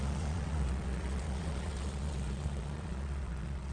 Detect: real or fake fake